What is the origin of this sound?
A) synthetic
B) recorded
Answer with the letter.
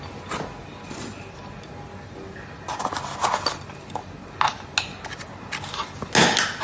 B